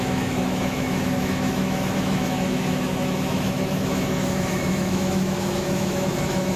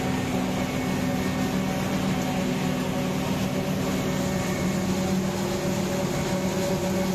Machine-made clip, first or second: first